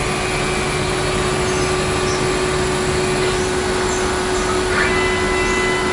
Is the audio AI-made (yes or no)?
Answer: no